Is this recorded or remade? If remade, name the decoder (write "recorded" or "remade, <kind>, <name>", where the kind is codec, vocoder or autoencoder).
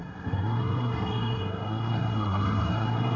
remade, codec, SNAC